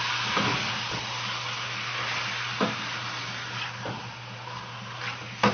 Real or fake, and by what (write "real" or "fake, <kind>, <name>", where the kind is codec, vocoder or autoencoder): real